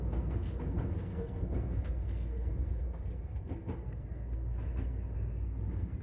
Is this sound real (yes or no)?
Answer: no